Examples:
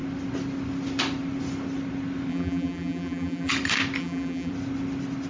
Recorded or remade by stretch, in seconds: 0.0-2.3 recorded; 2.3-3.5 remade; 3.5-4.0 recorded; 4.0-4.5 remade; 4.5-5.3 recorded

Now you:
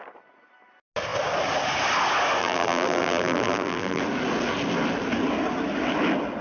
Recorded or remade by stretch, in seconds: 0.0-2.4 recorded; 2.4-4.0 remade; 4.0-6.4 recorded

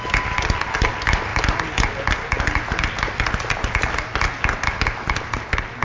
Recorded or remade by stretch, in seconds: 0.0-5.8 recorded

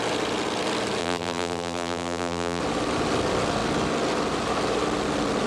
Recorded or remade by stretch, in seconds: 0.0-1.0 recorded; 1.0-2.6 remade; 2.6-5.5 recorded

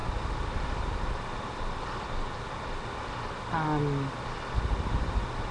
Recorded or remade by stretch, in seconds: 0.0-5.5 recorded

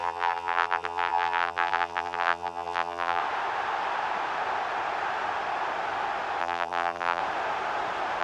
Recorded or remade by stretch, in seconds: 0.0-3.2 remade; 3.2-6.4 recorded; 6.4-7.2 remade; 7.2-8.2 recorded

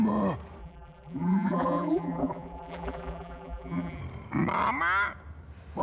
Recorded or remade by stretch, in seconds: 0.0-0.6 recorded; 0.6-4.0 remade; 4.0-5.8 recorded